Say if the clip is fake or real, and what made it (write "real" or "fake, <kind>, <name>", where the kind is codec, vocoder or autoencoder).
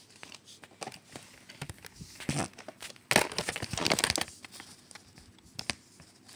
real